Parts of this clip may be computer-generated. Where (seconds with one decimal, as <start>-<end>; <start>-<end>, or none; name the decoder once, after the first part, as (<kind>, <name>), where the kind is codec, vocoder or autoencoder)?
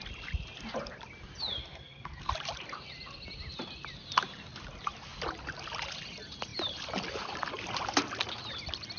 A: 1.6-2.3 (codec, SNAC)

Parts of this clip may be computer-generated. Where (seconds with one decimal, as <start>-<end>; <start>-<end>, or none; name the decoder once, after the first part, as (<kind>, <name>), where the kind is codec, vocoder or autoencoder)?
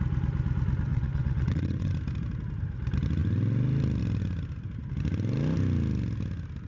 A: 0.9-1.9 (vocoder, WaveNeXt)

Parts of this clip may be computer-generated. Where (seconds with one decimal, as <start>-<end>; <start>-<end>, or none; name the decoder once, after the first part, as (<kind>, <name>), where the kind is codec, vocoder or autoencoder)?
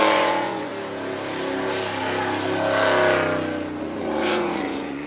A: 0.0-0.7 (vocoder, Vocos); 3.8-5.1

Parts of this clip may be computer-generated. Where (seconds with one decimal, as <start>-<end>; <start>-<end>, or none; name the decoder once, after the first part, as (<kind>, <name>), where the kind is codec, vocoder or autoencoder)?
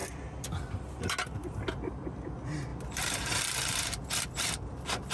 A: none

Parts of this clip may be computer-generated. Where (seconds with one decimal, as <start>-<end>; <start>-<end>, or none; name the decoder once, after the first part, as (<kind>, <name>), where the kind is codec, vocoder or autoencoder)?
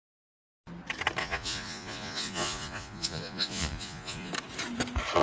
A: 1.2-4.3 (vocoder, Vocos)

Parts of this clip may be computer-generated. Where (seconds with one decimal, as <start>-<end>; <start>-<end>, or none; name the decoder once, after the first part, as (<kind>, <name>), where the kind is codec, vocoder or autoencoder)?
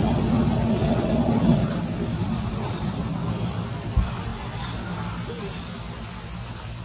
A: 0.0-1.8 (vocoder, WaveNeXt); 2.2-2.9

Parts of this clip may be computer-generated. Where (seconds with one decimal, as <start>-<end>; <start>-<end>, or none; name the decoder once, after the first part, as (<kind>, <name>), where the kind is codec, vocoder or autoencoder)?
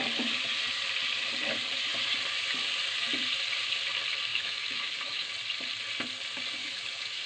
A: 4.3-5.3 (autoencoder, DAC-VAE); 6.6-7.3